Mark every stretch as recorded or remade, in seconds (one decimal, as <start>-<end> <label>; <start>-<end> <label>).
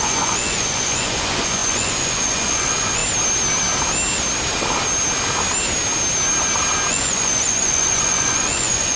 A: 0.0-3.0 remade; 3.0-6.9 recorded; 6.9-9.0 remade